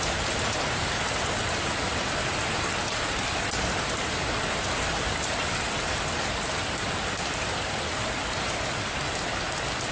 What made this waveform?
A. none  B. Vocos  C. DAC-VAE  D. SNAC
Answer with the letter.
A